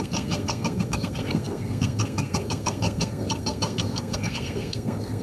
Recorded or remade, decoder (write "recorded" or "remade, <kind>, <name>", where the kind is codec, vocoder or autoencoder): remade, codec, SNAC